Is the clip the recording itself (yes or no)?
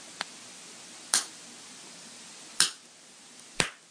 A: yes